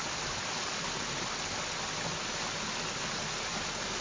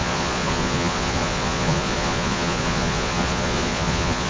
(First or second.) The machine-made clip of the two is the second